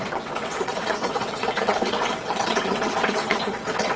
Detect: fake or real fake